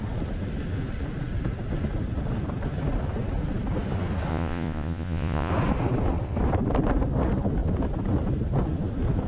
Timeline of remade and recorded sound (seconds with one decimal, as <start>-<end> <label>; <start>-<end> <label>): 0.0-4.3 recorded; 4.3-5.5 remade; 5.5-9.3 recorded

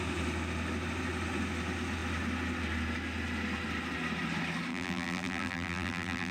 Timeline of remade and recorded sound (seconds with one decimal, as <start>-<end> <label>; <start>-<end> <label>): 0.0-4.7 recorded; 4.7-6.3 remade

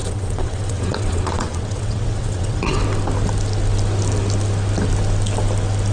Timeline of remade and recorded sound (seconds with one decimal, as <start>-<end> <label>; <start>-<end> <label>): 0.0-2.8 remade; 2.8-5.9 recorded

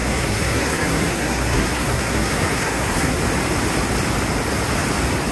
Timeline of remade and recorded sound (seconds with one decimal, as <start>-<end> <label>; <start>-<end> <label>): 0.0-3.2 remade; 3.2-5.3 recorded